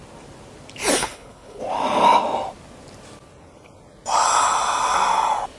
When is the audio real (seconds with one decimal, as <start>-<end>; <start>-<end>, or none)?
0.0-1.0; 1.6-5.6

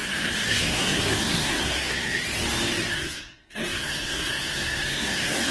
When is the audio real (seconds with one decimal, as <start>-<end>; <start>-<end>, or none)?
2.2-2.9

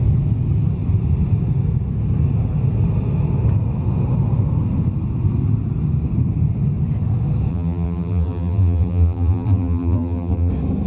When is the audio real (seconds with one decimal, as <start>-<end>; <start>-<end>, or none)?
0.0-7.5; 10.5-10.9

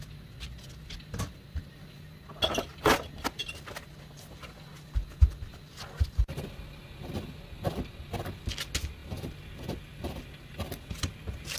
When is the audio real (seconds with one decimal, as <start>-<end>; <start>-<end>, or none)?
0.0-11.6